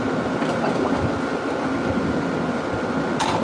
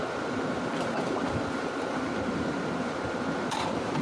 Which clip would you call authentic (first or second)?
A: first